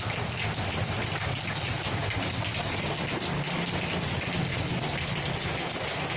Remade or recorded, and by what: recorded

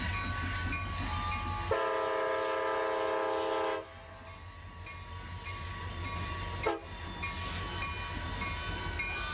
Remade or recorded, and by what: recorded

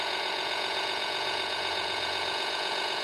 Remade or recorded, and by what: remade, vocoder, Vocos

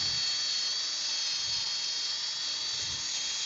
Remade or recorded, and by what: recorded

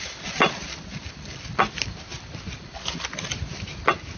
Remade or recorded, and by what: recorded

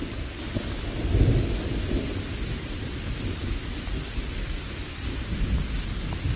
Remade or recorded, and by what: recorded